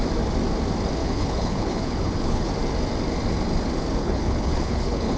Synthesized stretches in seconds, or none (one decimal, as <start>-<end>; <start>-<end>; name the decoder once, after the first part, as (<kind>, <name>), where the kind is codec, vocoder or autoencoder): 1.0-2.5 (codec, HILCodec); 4.0-5.2